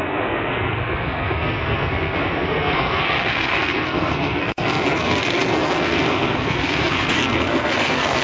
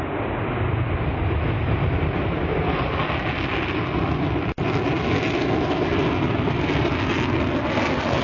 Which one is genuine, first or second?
second